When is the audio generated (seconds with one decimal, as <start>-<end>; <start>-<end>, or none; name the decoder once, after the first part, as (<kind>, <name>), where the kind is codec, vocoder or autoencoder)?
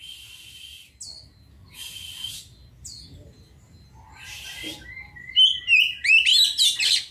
none